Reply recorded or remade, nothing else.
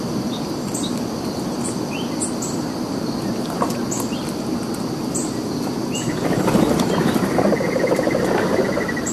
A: recorded